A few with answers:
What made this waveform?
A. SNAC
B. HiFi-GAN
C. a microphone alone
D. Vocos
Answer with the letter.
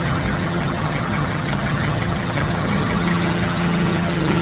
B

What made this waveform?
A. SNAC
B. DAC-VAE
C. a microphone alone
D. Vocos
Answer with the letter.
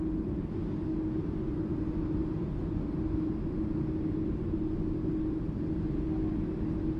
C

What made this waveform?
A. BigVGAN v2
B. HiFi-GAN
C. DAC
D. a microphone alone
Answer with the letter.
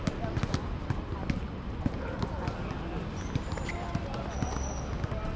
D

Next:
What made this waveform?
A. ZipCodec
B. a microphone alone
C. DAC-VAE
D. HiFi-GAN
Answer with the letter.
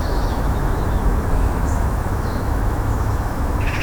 C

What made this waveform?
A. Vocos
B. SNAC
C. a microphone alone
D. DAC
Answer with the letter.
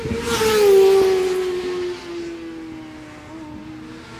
C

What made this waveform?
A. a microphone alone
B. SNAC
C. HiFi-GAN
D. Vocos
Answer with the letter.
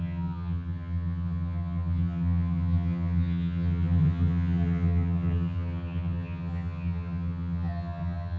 C